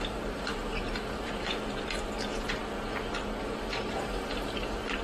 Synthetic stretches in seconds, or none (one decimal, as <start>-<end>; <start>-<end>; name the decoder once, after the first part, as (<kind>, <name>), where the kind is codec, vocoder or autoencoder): 0.0-2.6 (vocoder, BigVGAN v2); 3.4-5.0